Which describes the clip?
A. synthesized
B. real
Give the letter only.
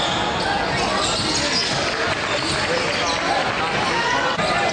B